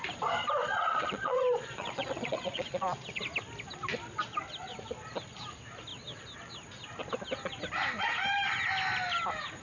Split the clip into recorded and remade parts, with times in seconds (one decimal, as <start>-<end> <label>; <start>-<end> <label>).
0.0-0.6 recorded; 0.6-3.2 remade; 3.2-9.6 recorded